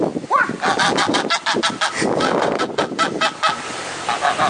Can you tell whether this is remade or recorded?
recorded